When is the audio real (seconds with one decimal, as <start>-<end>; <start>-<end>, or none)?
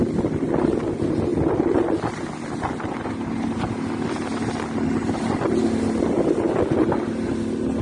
0.0-7.8